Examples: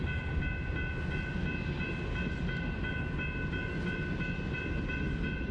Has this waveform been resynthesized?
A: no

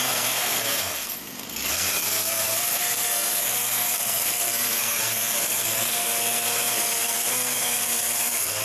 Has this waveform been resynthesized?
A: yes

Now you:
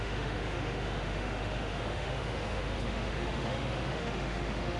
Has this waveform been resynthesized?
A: yes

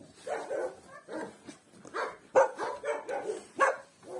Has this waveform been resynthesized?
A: no